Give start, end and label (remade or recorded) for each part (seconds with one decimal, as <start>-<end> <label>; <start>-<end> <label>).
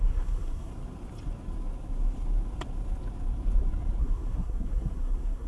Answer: 0.0-0.7 remade; 0.7-4.0 recorded; 4.0-5.5 remade